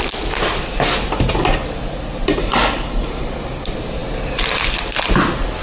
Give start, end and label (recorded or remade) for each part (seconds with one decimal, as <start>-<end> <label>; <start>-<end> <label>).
0.0-2.4 recorded; 2.4-3.2 remade; 3.2-5.6 recorded